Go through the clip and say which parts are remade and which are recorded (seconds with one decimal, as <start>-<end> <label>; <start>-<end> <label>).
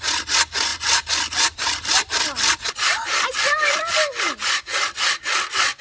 0.0-0.7 recorded; 0.7-4.2 remade; 4.2-5.8 recorded